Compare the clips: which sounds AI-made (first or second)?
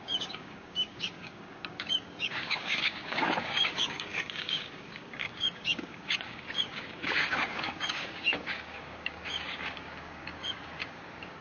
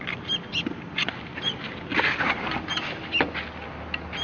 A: first